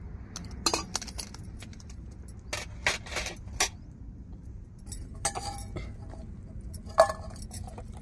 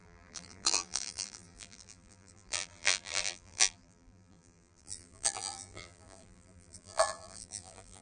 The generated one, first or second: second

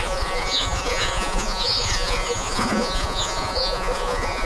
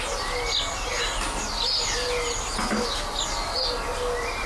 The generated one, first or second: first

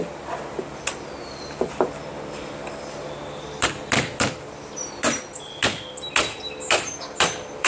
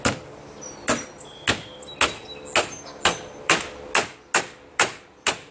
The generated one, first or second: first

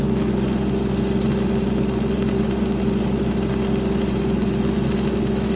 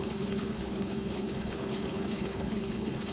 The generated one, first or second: second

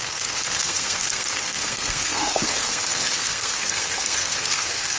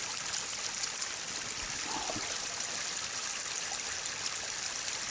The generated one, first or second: first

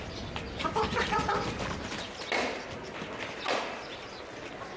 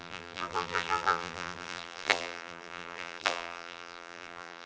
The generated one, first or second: second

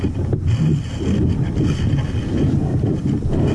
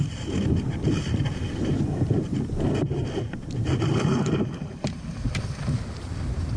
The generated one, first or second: second